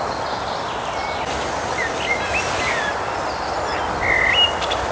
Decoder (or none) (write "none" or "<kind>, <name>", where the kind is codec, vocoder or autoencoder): none